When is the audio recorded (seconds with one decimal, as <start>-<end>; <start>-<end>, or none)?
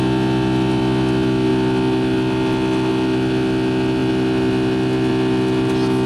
0.0-6.1